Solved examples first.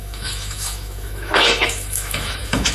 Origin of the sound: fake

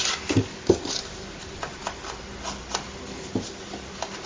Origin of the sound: real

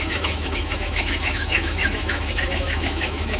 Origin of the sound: fake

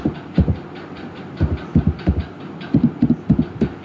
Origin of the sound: real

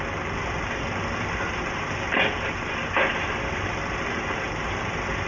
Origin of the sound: real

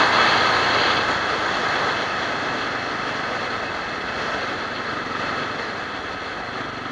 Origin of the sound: real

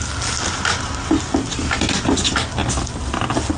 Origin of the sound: real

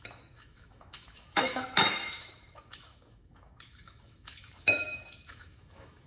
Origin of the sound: fake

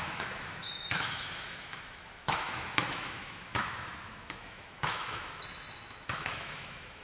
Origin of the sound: fake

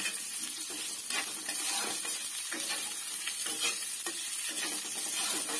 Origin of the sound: real